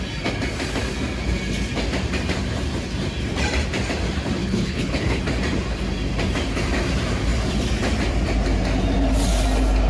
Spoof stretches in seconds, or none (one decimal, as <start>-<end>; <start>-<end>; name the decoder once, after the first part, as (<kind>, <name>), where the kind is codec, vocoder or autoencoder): 4.4-5.2 (codec, HILCodec)